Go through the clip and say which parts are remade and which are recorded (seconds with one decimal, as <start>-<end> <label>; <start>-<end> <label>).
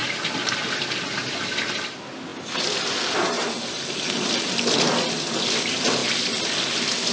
0.0-7.1 recorded